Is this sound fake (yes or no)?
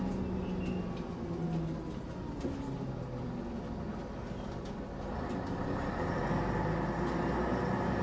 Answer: no